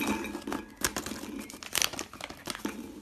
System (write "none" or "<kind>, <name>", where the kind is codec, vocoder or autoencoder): none